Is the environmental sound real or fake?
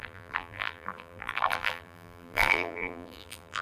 fake